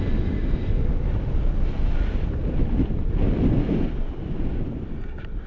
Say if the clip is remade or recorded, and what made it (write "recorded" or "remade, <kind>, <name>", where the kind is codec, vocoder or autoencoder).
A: recorded